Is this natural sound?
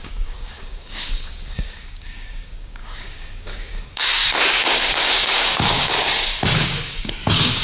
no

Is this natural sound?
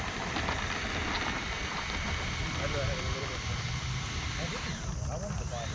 yes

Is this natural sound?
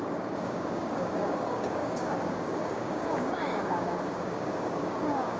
no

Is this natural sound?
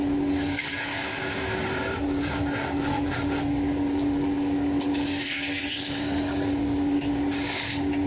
no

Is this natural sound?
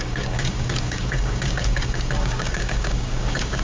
no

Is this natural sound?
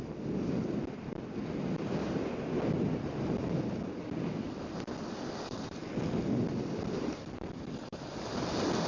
yes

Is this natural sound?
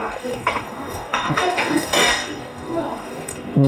no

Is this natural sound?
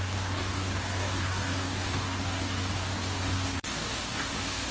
no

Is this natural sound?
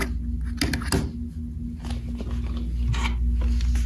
yes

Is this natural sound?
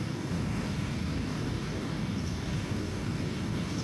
no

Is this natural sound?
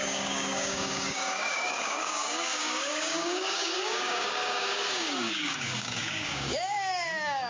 no